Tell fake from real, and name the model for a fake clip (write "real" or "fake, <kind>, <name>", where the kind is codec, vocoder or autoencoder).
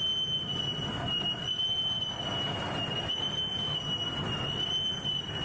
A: real